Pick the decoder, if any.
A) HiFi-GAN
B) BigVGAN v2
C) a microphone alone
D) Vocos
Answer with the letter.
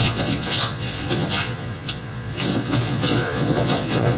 D